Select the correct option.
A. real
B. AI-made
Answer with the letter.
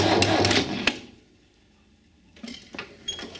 A